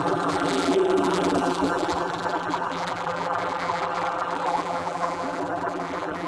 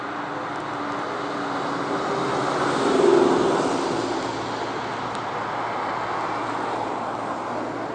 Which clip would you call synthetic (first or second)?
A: first